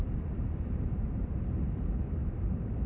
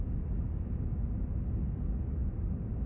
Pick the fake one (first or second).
first